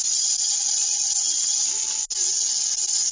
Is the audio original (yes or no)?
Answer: yes